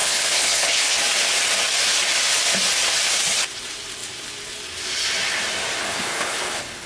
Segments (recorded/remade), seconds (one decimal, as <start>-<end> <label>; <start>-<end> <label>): 0.0-1.0 remade; 1.0-5.8 recorded; 5.8-6.9 remade